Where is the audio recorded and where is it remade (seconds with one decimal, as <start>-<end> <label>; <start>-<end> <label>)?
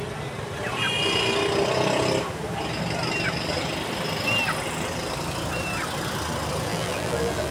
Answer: 0.0-6.7 recorded; 6.7-7.5 remade